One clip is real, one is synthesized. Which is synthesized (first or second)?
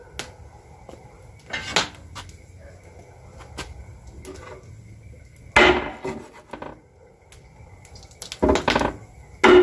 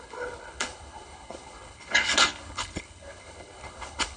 second